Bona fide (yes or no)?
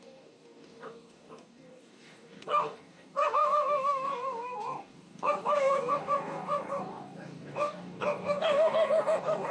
no